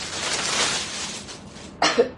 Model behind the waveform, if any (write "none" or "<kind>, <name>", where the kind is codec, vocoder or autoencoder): none